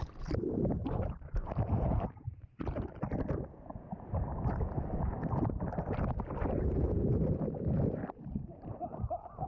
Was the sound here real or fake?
fake